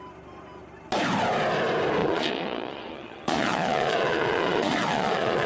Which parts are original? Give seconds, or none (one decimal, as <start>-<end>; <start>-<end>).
0.0-2.0